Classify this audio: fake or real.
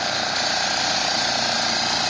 real